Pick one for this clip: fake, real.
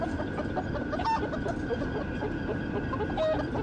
real